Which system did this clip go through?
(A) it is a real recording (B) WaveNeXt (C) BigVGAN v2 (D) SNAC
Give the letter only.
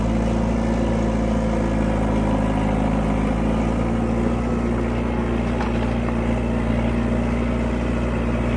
A